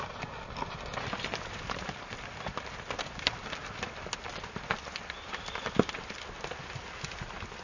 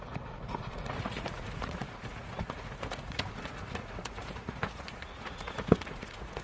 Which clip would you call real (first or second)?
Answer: first